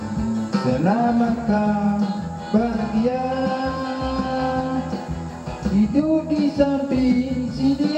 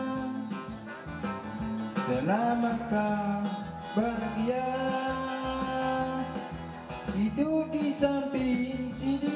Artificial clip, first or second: first